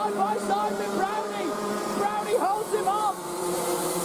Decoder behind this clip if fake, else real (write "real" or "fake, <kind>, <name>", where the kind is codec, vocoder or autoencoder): real